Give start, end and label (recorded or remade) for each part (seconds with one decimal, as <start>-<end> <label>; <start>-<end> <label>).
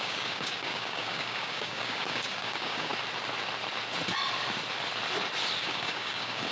0.0-2.9 remade; 2.9-5.6 recorded; 5.6-6.5 remade